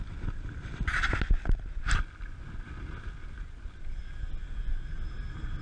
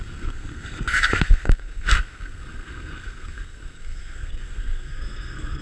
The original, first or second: first